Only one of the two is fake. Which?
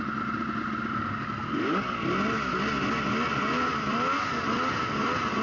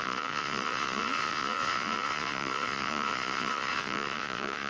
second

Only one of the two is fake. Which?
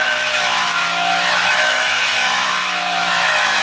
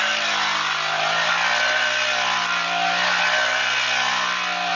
first